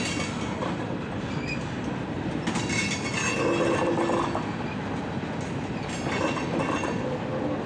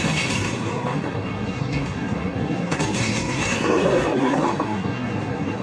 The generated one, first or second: second